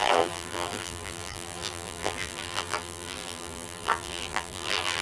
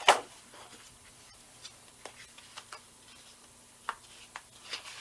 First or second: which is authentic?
second